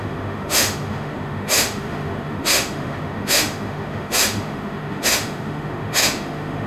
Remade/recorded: remade